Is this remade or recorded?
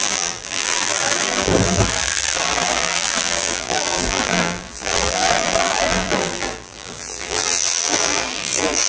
remade